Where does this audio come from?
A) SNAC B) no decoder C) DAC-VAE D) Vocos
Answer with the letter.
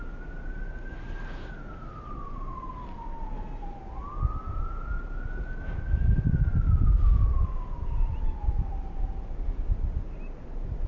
B